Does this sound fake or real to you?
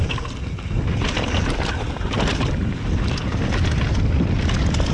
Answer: real